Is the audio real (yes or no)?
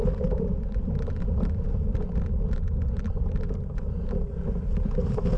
yes